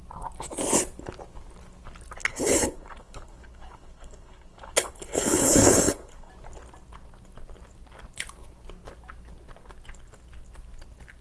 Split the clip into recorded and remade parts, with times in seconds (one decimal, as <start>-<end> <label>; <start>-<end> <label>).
0.0-2.2 recorded; 2.2-6.3 remade; 6.3-11.2 recorded